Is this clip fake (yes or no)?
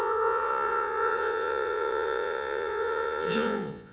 yes